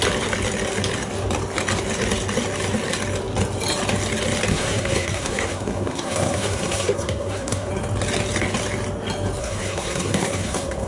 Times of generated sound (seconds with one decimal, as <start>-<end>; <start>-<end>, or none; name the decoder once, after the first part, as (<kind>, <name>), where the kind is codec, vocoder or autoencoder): 4.5-7.7 (codec, SNAC); 9.4-10.9